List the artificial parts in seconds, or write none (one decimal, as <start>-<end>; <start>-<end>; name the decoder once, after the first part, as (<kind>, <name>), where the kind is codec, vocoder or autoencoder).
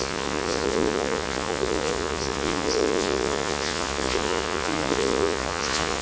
0.0-6.0 (vocoder, Vocos)